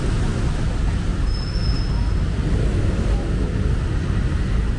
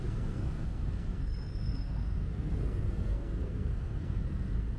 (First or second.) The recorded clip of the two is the first